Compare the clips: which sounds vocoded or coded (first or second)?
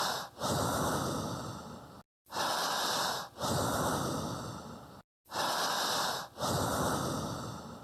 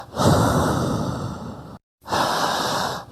second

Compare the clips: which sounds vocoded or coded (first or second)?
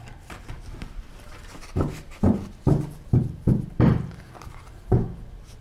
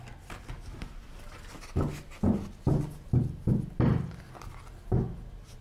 first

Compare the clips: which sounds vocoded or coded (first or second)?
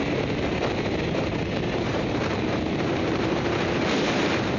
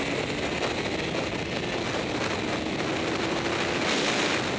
first